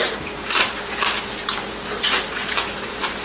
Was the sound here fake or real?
fake